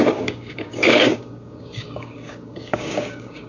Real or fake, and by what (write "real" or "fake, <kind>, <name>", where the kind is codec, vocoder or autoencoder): fake, codec, DAC